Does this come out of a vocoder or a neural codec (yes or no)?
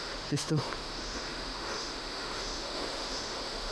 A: yes